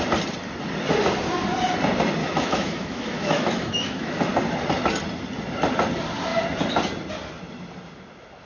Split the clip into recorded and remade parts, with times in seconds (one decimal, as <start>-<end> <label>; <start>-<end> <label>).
0.0-2.2 recorded; 2.2-4.2 remade; 4.2-8.5 recorded